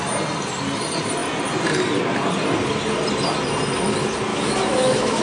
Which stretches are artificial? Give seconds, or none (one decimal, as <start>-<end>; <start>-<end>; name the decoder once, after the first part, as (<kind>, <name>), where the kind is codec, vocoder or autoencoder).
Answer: 4.3-5.2 (autoencoder, DAC-VAE)